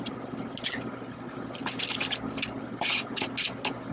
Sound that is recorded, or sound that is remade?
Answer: recorded